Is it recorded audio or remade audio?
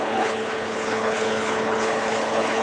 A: remade